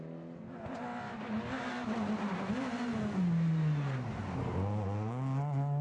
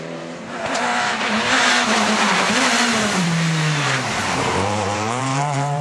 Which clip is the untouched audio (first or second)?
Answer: first